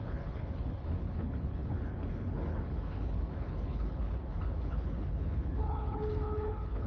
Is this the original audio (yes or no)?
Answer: no